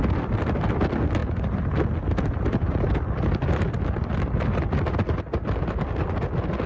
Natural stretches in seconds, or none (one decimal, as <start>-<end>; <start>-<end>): 0.0-6.7